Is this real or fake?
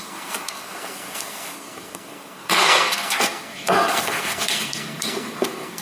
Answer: fake